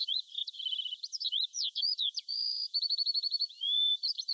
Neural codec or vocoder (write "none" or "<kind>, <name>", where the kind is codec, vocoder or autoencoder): vocoder, Vocos